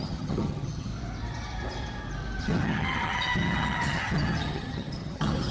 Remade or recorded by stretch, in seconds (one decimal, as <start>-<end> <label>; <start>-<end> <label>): 0.0-0.9 remade; 0.9-2.4 recorded; 2.4-5.5 remade